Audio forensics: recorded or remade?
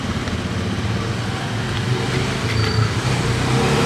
recorded